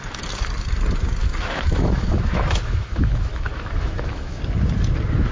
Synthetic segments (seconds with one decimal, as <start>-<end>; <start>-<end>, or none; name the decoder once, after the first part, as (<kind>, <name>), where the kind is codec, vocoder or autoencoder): 1.2-4.4 (autoencoder, DAC-VAE)